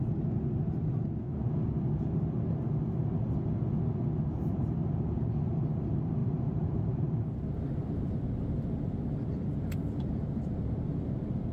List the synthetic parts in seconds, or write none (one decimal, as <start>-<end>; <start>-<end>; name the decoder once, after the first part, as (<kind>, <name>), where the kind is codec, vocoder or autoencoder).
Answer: 6.2-7.3 (vocoder, BigVGAN v2)